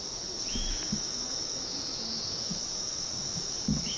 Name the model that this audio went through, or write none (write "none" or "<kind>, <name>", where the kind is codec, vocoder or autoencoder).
autoencoder, DAC-VAE